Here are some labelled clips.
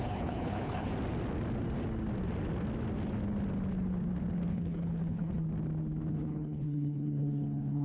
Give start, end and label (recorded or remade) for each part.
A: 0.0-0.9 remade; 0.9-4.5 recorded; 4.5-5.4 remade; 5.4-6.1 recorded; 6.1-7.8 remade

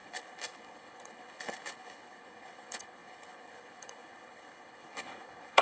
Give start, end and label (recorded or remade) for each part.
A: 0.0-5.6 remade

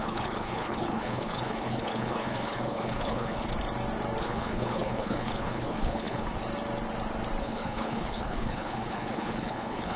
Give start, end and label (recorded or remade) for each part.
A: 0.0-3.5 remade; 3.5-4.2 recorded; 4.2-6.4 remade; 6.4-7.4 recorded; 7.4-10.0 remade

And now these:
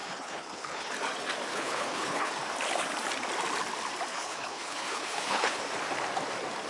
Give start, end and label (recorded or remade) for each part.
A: 0.0-0.9 remade; 0.9-1.5 recorded; 1.5-2.3 remade; 2.3-4.1 recorded; 4.1-5.6 remade; 5.6-6.7 recorded

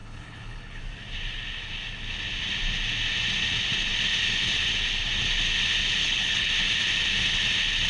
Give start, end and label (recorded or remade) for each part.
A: 0.0-0.8 remade; 0.8-6.0 recorded; 6.0-6.5 remade; 6.5-7.9 recorded

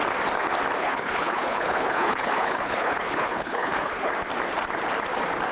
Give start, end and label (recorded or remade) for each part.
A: 0.0-0.8 recorded; 0.8-4.1 remade; 4.1-5.5 recorded

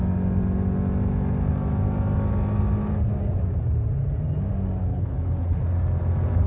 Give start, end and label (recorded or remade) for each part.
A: 0.0-4.9 recorded; 4.9-5.6 remade; 5.6-6.5 recorded